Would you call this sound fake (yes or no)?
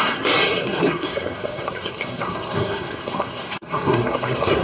yes